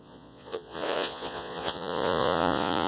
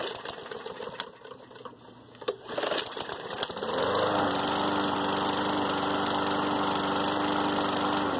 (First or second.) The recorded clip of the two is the second